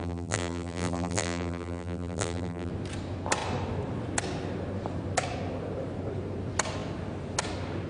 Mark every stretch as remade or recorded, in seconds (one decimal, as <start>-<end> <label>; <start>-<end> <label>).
0.0-2.7 remade; 2.7-7.9 recorded